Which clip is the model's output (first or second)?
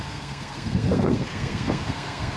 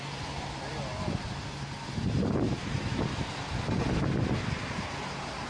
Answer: first